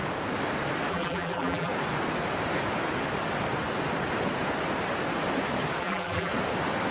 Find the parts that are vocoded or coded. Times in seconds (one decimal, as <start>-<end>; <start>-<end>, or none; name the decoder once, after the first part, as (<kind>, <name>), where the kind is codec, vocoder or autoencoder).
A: 0.9-1.7 (vocoder, BigVGAN v2); 5.8-6.3